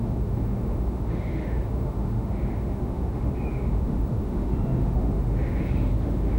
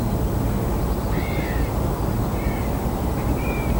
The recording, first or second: second